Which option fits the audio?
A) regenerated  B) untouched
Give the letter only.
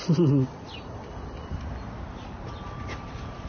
A